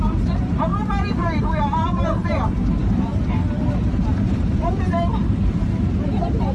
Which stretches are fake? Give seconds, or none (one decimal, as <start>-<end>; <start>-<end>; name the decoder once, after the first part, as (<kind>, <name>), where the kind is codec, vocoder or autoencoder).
0.0-0.7 (vocoder, BigVGAN v2); 1.4-3.1; 3.9-6.5